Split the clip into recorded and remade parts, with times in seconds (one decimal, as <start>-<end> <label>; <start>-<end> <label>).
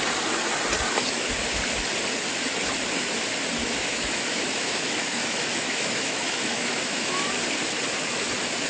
0.0-3.6 recorded; 3.6-7.3 remade; 7.3-8.7 recorded